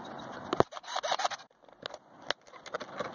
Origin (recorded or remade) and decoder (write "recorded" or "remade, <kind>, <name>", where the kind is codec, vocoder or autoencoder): recorded